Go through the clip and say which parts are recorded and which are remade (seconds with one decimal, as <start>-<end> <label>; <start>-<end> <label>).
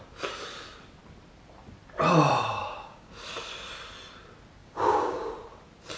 0.0-2.5 recorded; 2.5-3.1 remade; 3.1-4.6 recorded; 4.6-5.3 remade; 5.3-6.0 recorded